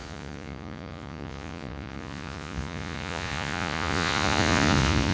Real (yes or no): no